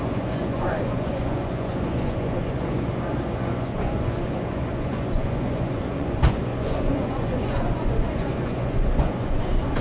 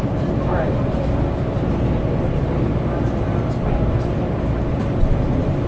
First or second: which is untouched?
second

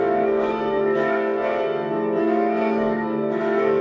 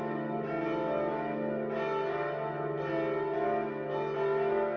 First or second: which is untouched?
second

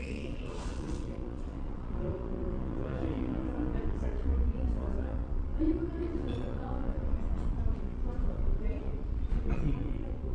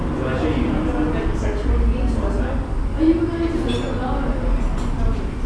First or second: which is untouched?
second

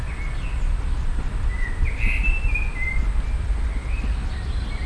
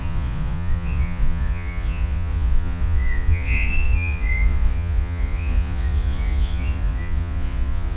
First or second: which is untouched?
first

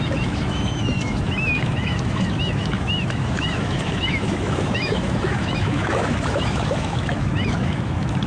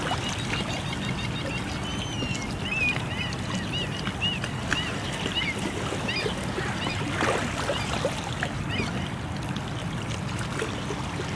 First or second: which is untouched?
second